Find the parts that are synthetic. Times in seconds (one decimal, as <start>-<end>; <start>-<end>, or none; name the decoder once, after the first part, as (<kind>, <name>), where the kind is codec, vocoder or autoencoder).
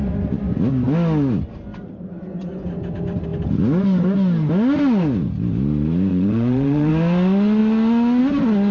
6.1-6.9 (vocoder, Vocos)